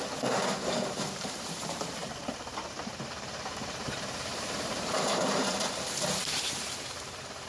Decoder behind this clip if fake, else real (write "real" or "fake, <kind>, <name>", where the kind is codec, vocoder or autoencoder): fake, vocoder, BigVGAN v2